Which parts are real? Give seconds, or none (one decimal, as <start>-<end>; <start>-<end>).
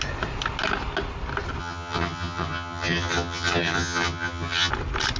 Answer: 0.0-1.6; 4.7-5.2